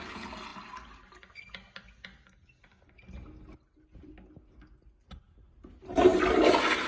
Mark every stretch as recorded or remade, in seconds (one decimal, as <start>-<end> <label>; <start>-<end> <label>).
0.0-6.9 recorded